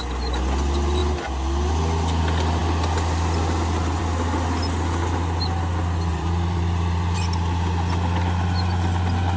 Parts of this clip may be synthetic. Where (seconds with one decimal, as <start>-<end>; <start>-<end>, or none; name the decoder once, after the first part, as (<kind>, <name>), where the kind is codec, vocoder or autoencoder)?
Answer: 6.1-7.2 (vocoder, BigVGAN v2)

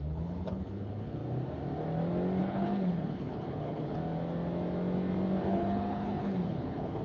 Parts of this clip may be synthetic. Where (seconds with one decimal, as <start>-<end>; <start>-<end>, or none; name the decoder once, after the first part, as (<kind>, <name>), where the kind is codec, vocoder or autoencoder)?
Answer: 0.0-1.2 (codec, HILCodec); 2.4-4.0; 5.4-7.0

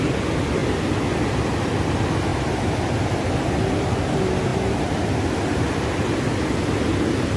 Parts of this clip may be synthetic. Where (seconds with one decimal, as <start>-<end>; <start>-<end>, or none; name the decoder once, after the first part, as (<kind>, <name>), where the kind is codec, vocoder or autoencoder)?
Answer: none

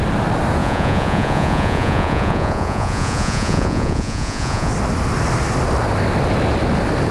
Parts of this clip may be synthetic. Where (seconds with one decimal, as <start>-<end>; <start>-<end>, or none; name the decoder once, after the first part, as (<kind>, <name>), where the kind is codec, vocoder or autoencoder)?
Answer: 0.6-4.7 (vocoder, Vocos)

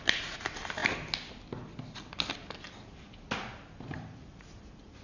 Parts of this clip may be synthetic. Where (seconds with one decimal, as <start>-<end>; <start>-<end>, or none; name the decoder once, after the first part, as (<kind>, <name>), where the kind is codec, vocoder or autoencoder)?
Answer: 0.0-0.8 (vocoder, BigVGAN v2); 3.8-5.0

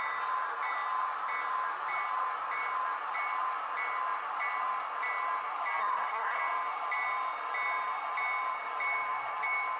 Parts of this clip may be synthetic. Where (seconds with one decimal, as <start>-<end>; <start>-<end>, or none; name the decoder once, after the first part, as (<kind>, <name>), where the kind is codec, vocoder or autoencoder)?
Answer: 5.8-6.4 (codec, SNAC)